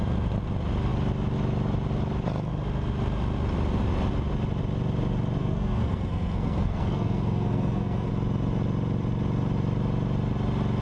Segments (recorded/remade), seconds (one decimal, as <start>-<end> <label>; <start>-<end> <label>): 0.0-5.4 recorded; 5.4-8.1 remade; 8.1-10.8 recorded